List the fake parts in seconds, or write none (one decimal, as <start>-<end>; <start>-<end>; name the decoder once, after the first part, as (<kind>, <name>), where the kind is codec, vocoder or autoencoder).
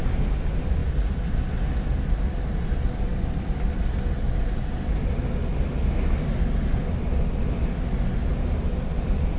none